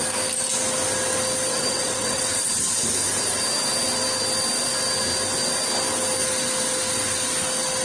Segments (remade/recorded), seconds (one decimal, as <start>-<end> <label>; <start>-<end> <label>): 0.0-1.5 recorded; 1.5-2.5 remade; 2.5-7.8 recorded